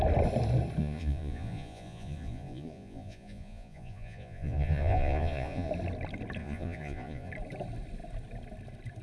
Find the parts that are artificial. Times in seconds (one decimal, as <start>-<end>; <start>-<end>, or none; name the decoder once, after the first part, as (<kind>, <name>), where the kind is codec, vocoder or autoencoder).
0.8-5.7 (vocoder, Vocos); 6.4-7.3